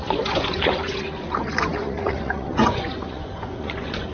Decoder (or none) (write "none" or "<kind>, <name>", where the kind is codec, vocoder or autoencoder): vocoder, Vocos